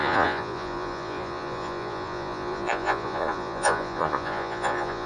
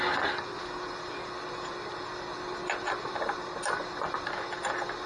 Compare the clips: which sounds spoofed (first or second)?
first